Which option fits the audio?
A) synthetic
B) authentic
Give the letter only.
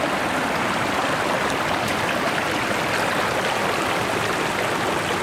B